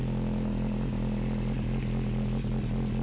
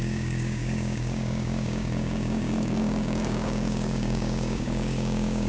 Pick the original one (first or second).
first